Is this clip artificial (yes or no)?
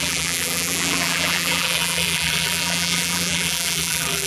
yes